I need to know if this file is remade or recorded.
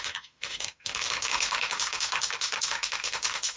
remade